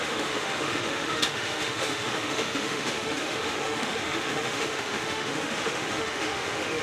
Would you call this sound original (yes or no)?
no